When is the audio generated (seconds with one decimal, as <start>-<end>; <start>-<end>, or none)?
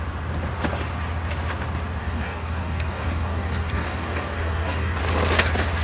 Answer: 2.0-5.0